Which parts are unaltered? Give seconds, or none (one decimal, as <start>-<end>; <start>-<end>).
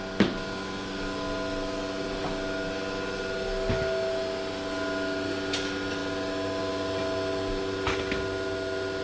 0.0-9.0